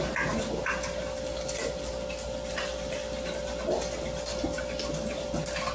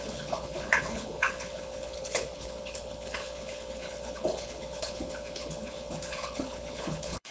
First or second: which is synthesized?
second